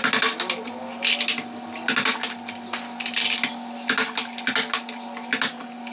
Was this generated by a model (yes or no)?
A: no